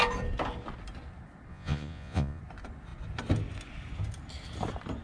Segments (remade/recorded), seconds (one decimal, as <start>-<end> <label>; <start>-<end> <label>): 0.0-1.5 recorded; 1.5-2.4 remade; 2.4-5.0 recorded